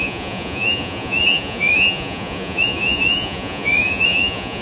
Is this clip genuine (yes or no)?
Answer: no